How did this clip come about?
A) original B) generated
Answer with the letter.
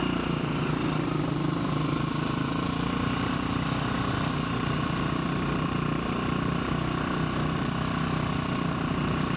B